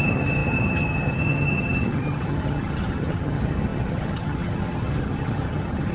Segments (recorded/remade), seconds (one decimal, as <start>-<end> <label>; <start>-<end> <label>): 0.0-5.9 remade